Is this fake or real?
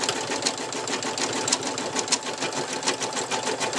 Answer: real